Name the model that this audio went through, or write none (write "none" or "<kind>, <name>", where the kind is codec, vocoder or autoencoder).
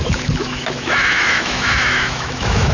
autoencoder, DAC-VAE